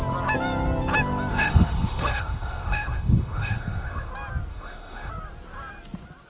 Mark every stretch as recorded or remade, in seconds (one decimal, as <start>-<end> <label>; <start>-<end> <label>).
0.0-1.3 recorded; 1.3-4.1 remade; 4.1-4.5 recorded; 4.5-5.1 remade; 5.1-6.3 recorded